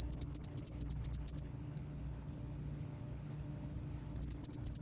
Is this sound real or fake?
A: fake